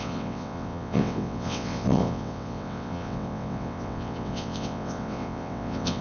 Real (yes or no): no